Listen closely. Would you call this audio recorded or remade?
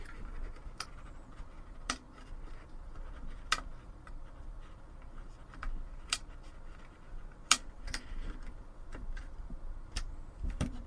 remade